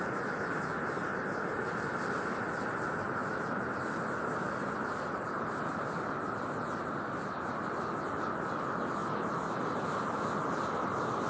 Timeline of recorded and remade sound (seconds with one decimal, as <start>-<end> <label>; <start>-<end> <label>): 0.0-11.3 recorded